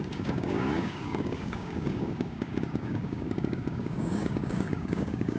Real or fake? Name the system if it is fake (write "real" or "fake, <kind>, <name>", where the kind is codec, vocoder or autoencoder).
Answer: fake, codec, DAC